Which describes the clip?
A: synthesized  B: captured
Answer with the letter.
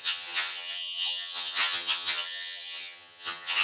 A